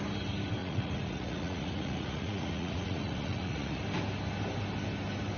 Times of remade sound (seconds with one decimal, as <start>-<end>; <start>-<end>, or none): 0.6-3.8